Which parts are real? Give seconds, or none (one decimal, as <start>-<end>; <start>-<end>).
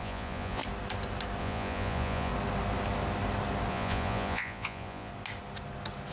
0.6-1.4; 2.3-3.7; 5.1-6.1